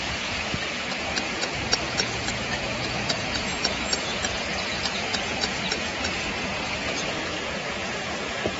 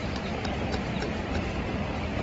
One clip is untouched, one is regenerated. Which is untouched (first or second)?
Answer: second